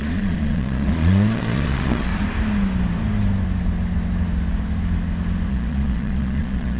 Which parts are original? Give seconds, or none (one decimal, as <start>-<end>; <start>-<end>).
2.1-5.5